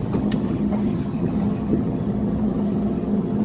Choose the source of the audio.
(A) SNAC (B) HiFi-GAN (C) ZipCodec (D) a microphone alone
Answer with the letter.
B